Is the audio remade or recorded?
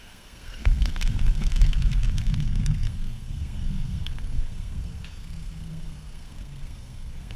remade